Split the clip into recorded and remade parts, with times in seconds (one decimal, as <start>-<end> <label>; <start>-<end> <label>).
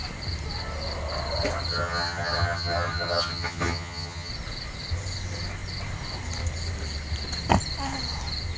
0.0-1.7 recorded; 1.7-4.3 remade; 4.3-8.6 recorded